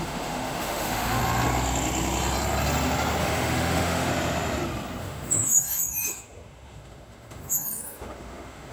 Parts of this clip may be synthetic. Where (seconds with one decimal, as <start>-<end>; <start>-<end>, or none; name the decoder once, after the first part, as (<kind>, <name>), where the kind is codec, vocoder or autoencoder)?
0.0-1.2 (autoencoder, DAC-VAE); 3.2-4.1; 5.0-8.7

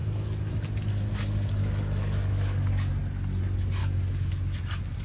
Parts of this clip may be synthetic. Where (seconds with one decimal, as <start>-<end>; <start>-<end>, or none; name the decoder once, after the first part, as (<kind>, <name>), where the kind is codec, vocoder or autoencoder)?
0.0-0.5 (codec, DAC); 0.9-2.9; 3.8-4.4

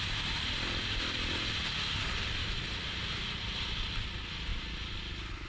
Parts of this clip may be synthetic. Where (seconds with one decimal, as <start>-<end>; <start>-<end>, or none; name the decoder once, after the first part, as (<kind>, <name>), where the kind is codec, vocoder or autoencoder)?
2.4-3.1 (vocoder, BigVGAN v2)